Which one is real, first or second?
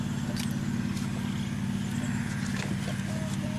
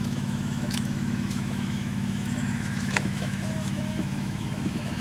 first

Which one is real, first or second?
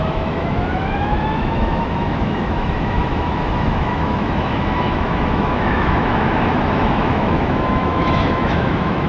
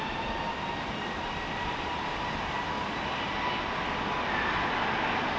second